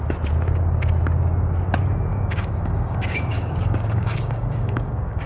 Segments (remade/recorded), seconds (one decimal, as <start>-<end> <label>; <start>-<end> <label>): 0.0-2.1 recorded; 2.1-5.3 remade